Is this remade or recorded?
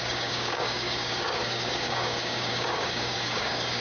remade